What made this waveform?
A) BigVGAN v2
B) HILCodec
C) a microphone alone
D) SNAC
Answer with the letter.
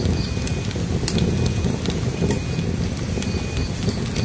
C